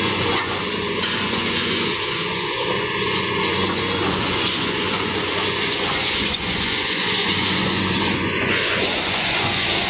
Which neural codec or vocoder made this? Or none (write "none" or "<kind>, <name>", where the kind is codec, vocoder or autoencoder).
vocoder, Vocos